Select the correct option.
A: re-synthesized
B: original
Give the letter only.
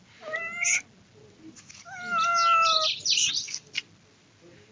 B